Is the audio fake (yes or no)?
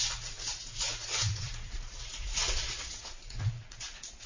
yes